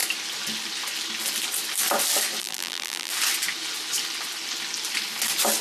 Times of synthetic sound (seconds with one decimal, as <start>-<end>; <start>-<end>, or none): 2.4-3.1